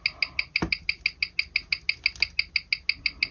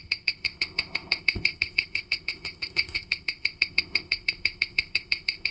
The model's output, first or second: second